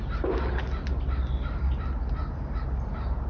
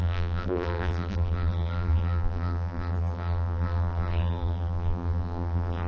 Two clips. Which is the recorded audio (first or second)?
first